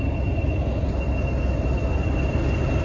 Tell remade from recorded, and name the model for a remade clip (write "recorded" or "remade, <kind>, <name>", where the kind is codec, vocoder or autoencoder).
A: recorded